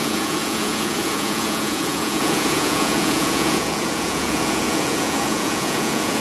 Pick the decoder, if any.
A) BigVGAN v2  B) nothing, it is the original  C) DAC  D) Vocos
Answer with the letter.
D